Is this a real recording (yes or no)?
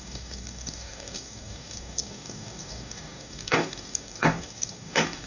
no